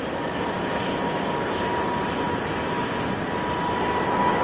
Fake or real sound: real